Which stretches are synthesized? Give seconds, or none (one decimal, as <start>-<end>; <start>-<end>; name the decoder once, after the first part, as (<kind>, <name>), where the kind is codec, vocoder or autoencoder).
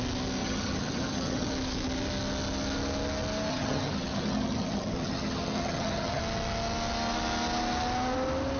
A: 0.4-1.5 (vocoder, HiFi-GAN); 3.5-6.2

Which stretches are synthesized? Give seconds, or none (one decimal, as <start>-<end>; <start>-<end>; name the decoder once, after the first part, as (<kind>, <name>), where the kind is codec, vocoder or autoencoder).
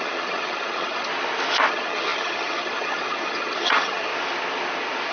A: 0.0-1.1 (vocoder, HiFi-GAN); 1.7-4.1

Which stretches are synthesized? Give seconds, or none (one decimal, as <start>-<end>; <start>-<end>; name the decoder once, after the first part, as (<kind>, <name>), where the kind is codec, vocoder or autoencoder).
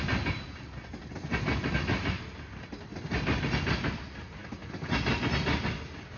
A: none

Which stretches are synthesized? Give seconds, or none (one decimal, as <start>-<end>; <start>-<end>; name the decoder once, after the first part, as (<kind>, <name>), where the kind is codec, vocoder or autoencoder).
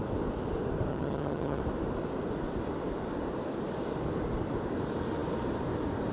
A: 0.9-1.6 (vocoder, HiFi-GAN)